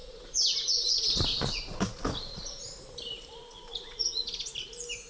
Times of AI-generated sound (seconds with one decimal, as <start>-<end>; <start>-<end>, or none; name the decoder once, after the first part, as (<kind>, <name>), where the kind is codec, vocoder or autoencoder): 0.0-2.6 (vocoder, Vocos); 3.4-4.5